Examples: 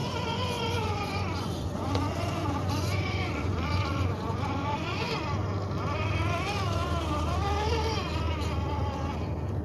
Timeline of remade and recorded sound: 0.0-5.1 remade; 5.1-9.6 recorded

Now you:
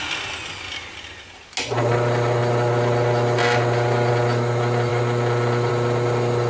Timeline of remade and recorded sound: 0.0-6.5 recorded

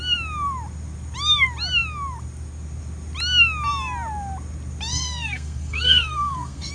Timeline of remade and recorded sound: 0.0-4.9 recorded; 4.9-6.7 remade

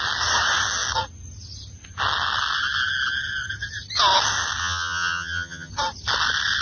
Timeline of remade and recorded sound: 0.0-4.6 recorded; 4.6-5.7 remade; 5.7-6.6 recorded

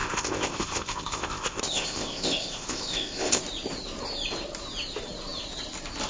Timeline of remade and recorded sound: 0.0-3.4 remade; 3.4-6.1 recorded

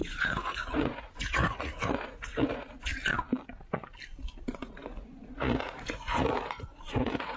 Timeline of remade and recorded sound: 0.0-2.9 remade; 2.9-4.4 recorded; 4.4-7.4 remade

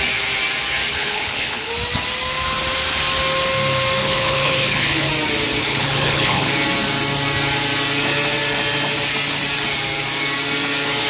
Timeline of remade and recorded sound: 0.0-0.9 recorded; 0.9-1.7 remade; 1.7-4.0 recorded; 4.0-5.1 remade; 5.1-5.6 recorded; 5.6-6.5 remade; 6.5-11.1 recorded